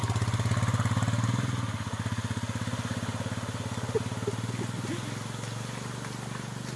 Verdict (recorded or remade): recorded